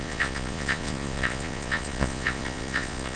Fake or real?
fake